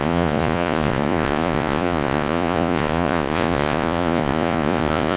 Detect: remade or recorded remade